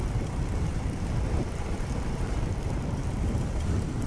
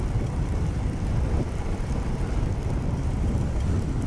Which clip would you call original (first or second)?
second